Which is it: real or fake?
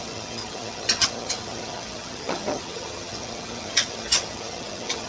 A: fake